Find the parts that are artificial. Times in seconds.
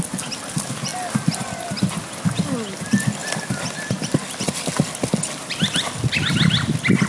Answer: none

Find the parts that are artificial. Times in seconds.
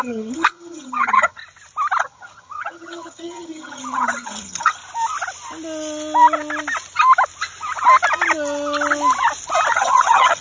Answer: 0.0-1.4 (vocoder, HiFi-GAN); 2.0-4.8; 9.7-10.4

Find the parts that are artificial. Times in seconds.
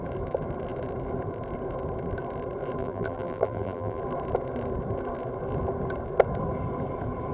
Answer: 2.8-4.0 (vocoder, BigVGAN v2)